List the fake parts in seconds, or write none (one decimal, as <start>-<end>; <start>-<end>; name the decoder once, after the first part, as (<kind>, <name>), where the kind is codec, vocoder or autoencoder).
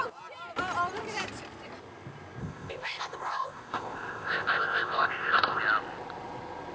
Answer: 2.4-5.6 (codec, ZipCodec)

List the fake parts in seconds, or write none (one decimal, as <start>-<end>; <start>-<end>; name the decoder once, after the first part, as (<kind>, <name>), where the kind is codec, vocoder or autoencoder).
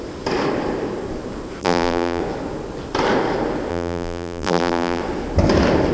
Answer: 1.6-2.2 (vocoder, BigVGAN v2); 3.7-5.0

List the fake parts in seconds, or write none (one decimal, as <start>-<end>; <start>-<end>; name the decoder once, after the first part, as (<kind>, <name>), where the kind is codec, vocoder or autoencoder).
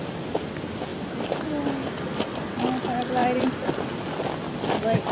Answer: none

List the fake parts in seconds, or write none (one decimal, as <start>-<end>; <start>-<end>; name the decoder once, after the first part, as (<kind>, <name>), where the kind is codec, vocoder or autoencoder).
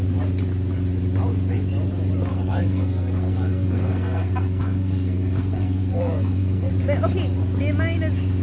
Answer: 2.3-6.7 (codec, SNAC)